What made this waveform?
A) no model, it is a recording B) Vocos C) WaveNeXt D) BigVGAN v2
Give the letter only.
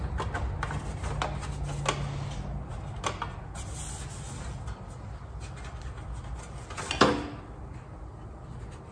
A